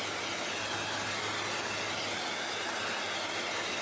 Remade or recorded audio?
recorded